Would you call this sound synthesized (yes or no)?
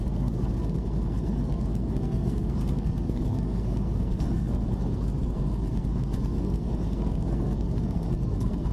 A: yes